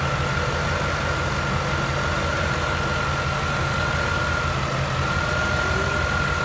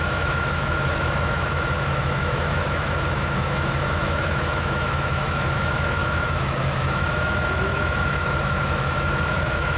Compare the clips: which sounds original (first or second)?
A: first